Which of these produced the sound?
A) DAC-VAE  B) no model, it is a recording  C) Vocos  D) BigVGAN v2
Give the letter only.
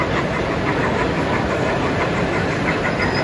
D